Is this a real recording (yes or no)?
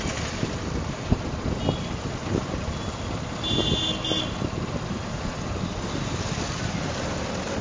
yes